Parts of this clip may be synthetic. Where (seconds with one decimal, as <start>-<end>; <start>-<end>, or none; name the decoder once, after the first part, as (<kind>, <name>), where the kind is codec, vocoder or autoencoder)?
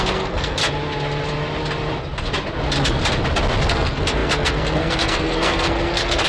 0.0-0.6 (codec, SNAC); 3.6-6.3